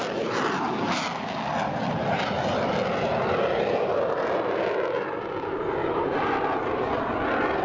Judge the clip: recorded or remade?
recorded